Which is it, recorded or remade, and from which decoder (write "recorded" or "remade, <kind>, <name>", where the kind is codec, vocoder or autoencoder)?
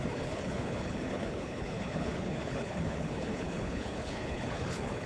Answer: remade, codec, HILCodec